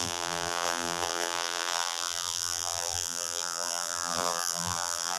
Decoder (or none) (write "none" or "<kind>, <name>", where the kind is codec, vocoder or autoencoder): vocoder, BigVGAN v2